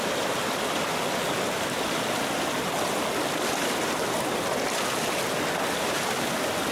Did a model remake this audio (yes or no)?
no